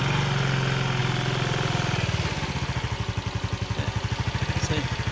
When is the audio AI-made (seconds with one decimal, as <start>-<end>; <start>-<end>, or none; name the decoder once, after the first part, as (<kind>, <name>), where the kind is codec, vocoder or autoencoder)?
none